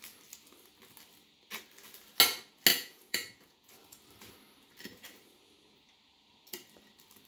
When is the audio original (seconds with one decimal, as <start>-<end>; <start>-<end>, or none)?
0.0-2.7; 3.7-7.3